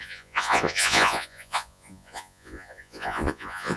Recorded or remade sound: remade